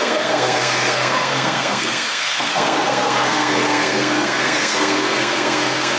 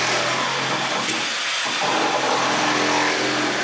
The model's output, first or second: first